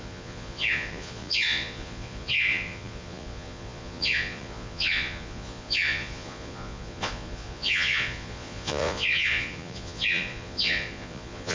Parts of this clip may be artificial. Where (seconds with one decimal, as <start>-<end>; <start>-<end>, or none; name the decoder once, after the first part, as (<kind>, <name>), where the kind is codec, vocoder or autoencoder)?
0.0-11.5 (vocoder, Vocos)